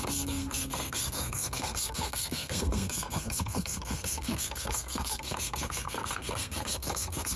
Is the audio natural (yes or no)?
no